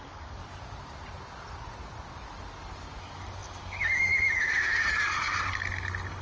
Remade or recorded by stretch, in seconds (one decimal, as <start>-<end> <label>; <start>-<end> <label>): 0.0-0.4 remade; 0.4-3.0 recorded; 3.0-6.2 remade